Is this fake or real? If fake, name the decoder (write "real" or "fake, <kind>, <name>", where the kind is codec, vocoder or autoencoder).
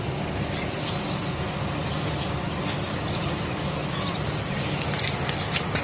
real